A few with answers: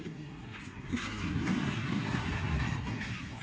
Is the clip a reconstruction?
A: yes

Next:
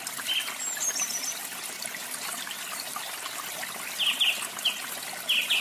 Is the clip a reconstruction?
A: no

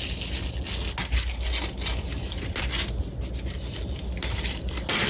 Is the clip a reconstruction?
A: no